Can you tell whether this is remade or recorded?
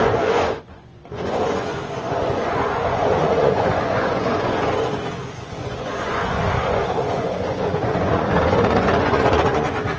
remade